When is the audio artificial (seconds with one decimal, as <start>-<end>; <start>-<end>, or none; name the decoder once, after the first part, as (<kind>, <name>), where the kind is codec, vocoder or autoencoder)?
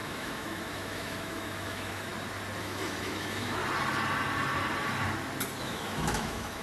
0.0-2.1 (autoencoder, DAC-VAE); 2.6-3.6; 5.6-6.6